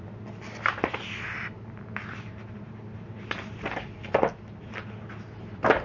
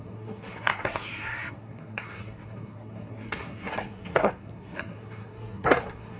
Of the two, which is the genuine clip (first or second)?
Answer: first